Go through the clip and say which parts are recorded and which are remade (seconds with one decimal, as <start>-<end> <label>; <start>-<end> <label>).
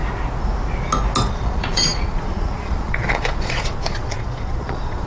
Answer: 0.0-1.3 recorded; 1.3-5.1 remade